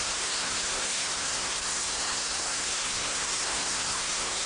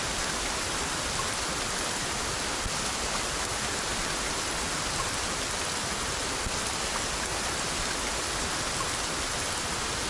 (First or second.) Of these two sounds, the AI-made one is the first